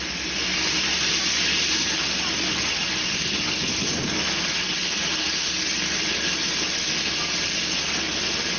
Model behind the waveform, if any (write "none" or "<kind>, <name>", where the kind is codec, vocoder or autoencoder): none